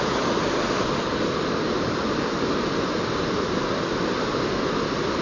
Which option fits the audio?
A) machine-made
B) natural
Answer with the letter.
B